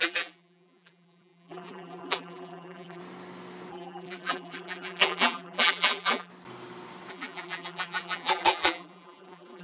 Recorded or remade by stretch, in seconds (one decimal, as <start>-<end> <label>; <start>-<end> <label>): 0.0-3.0 remade; 3.0-3.7 recorded; 3.7-6.3 remade; 6.3-7.1 recorded; 7.1-9.6 remade